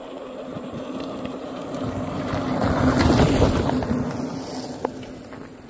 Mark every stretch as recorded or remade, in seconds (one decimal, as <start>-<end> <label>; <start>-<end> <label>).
0.0-0.5 recorded; 0.5-2.5 remade; 2.5-5.7 recorded